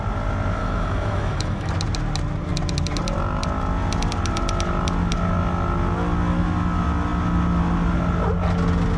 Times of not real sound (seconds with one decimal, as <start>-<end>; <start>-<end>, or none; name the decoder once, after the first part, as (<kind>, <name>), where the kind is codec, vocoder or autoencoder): 0.6-1.7 (autoencoder, DAC-VAE)